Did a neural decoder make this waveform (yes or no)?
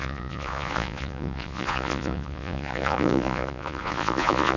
yes